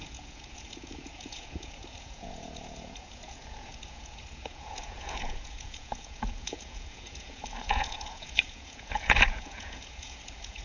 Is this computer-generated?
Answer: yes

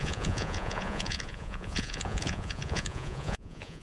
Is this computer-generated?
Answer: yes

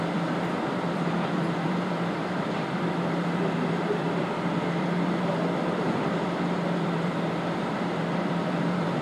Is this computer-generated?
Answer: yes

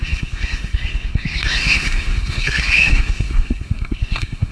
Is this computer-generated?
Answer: yes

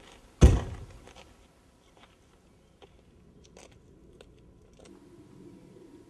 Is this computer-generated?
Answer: no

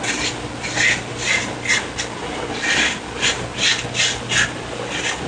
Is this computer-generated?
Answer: no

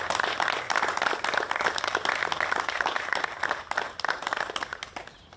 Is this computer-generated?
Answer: no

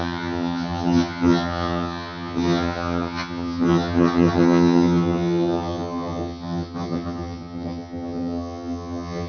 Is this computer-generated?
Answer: yes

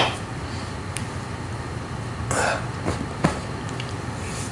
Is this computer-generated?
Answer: no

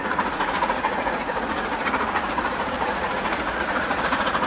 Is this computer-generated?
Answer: yes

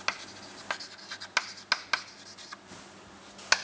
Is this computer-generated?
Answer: no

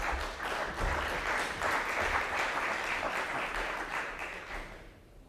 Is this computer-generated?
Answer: no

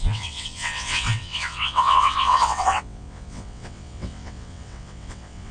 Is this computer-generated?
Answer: yes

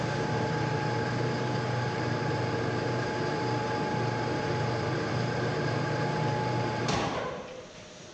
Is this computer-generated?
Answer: yes